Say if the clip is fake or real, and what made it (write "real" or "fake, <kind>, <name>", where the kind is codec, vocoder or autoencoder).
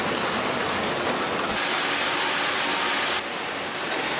real